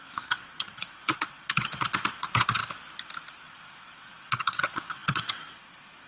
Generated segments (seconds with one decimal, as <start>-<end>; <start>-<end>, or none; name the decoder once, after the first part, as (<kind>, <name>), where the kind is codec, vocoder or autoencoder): 0.0-2.6 (vocoder, WaveNeXt); 3.4-6.1